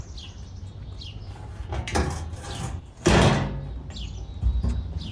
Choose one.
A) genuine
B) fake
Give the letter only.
A